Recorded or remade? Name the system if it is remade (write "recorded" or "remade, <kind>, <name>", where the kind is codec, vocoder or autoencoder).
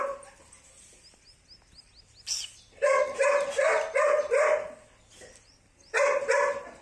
recorded